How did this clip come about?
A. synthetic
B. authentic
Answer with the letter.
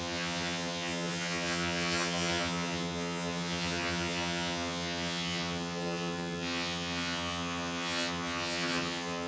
A